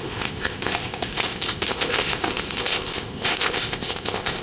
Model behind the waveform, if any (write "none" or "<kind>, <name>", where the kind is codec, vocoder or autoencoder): codec, ZipCodec